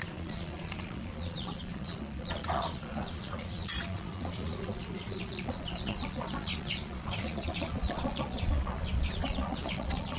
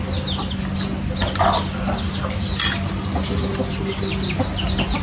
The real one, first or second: second